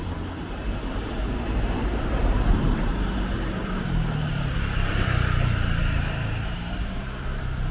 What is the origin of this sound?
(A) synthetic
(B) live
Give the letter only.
A